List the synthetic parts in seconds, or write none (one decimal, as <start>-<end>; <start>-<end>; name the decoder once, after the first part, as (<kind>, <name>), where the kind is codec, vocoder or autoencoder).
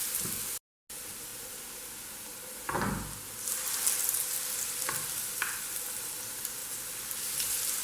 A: 6.6-7.8 (vocoder, BigVGAN v2)